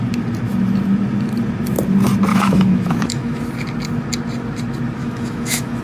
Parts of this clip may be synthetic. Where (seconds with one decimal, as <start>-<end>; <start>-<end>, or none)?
2.3-3.4; 5.0-5.8